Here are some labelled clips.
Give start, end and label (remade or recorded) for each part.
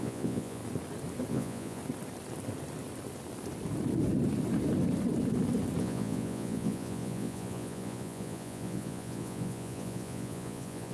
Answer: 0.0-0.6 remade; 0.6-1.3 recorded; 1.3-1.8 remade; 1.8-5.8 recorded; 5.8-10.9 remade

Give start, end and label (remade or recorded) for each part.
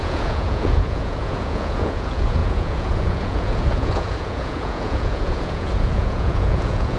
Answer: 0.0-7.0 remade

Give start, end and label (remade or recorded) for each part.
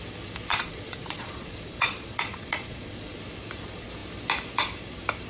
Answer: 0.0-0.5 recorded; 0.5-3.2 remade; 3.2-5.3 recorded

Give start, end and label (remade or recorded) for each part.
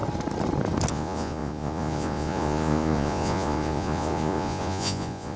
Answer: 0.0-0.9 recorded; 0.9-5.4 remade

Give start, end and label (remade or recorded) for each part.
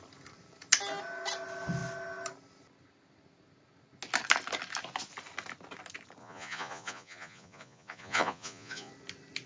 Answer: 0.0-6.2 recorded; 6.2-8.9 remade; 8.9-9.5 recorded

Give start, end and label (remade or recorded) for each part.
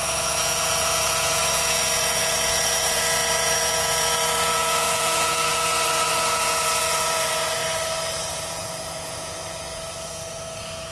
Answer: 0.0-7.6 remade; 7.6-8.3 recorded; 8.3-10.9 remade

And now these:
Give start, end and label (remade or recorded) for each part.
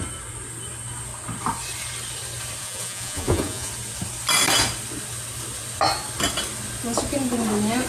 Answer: 0.0-2.6 recorded; 2.6-3.7 remade; 3.7-7.9 recorded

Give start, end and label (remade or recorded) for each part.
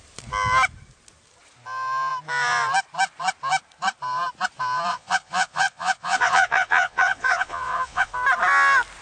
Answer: 0.0-4.9 recorded; 4.9-8.1 remade; 8.1-9.0 recorded